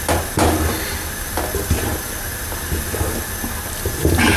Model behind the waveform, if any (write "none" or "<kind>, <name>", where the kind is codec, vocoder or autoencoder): none